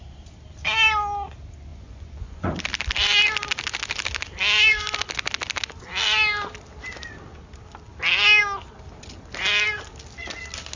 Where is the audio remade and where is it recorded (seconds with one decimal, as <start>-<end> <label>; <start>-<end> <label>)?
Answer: 0.0-1.7 recorded; 1.7-2.6 remade; 2.6-10.8 recorded